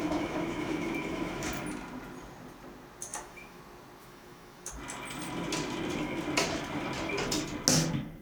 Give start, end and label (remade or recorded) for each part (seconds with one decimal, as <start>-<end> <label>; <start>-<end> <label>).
0.0-1.5 remade; 1.5-3.1 recorded; 3.1-3.6 remade; 3.6-4.0 recorded; 4.0-4.7 remade; 4.7-8.2 recorded